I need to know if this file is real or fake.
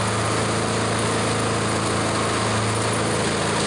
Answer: real